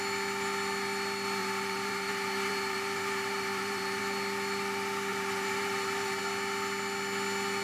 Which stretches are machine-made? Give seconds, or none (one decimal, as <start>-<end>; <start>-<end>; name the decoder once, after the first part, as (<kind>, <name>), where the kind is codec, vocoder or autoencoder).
1.4-4.0 (vocoder, BigVGAN v2); 5.1-6.2